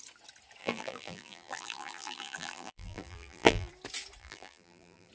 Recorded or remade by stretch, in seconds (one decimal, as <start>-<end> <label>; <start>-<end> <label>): 0.0-0.6 recorded; 0.6-3.7 remade; 3.7-4.2 recorded; 4.2-5.1 remade